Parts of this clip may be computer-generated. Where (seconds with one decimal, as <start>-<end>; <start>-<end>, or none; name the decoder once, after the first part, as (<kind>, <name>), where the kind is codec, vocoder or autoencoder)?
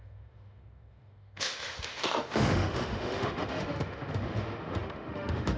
0.0-5.6 (autoencoder, DAC-VAE)